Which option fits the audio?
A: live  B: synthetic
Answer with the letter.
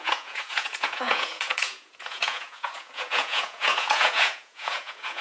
B